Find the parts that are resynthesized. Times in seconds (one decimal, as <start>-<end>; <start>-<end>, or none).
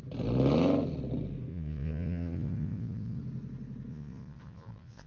1.5-3.2; 3.9-5.1